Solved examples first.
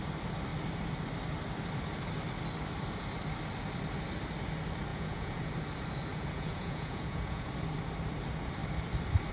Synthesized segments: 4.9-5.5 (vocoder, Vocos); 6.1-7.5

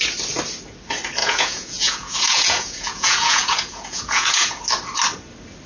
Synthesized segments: 1.2-4.6 (vocoder, Vocos)